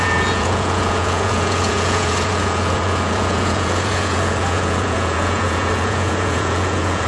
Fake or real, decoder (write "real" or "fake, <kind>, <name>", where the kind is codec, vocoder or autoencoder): fake, vocoder, Vocos